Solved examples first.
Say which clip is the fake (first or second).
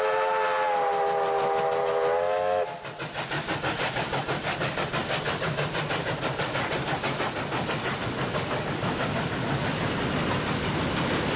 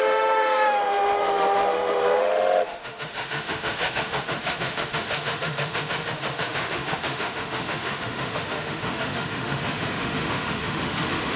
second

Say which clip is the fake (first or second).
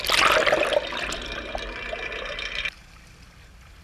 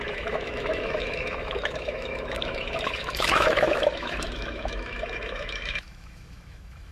second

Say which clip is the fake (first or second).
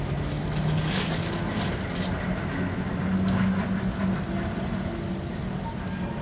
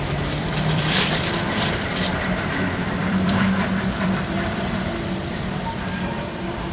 second